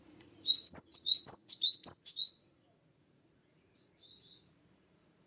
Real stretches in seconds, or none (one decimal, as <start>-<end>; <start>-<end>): none